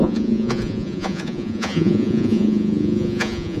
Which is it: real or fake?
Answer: fake